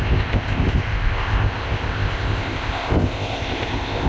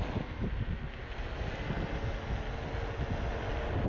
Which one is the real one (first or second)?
second